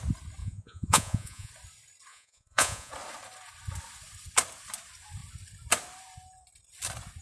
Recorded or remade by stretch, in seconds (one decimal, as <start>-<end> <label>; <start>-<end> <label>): 0.0-0.4 recorded; 0.4-1.5 remade; 1.5-2.1 recorded; 2.1-2.9 remade; 2.9-7.2 recorded